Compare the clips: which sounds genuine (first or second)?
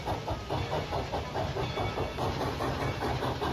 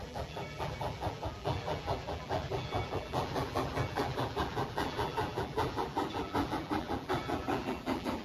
first